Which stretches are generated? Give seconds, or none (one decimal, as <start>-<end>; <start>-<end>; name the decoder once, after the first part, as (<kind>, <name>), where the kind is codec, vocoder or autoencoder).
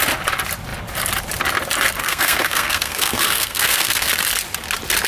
2.0-4.1 (codec, SNAC)